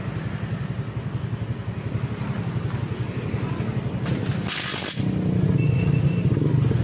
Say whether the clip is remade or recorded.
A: recorded